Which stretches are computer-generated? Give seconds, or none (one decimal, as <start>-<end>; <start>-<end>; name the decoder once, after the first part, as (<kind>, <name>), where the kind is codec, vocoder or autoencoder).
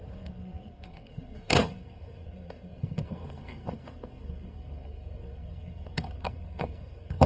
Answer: 0.0-7.3 (codec, SNAC)